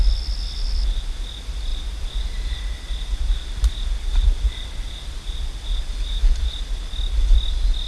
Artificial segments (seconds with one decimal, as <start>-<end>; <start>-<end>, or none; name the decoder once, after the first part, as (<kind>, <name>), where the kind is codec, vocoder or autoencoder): none